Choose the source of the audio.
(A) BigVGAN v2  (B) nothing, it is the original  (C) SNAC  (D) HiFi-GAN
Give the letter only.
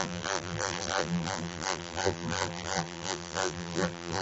A